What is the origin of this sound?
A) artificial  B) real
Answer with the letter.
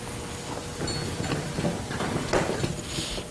B